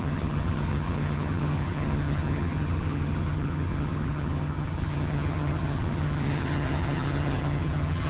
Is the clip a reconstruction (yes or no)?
yes